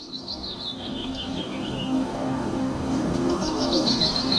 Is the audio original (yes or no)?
no